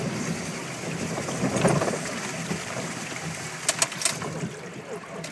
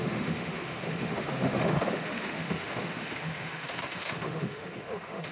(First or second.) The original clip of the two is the first